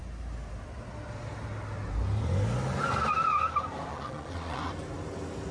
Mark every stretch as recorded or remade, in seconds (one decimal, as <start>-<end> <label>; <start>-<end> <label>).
0.0-3.9 recorded; 3.9-4.7 remade; 4.7-5.5 recorded